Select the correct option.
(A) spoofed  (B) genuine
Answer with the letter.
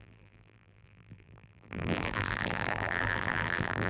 A